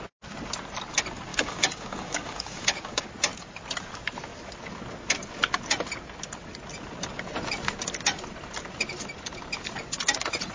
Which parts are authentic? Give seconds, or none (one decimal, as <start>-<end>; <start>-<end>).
0.0-1.3; 3.0-10.5